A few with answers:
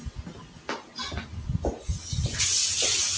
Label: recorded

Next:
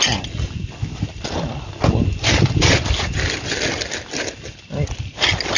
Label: recorded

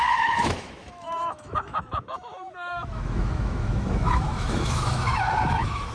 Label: remade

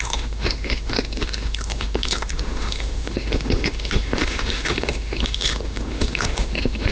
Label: remade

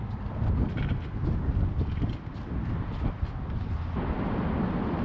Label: recorded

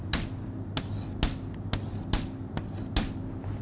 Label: recorded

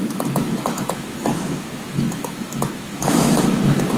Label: remade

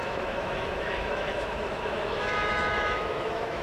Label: remade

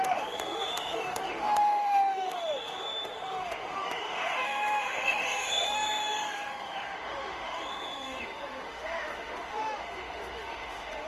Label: remade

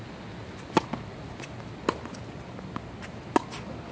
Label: recorded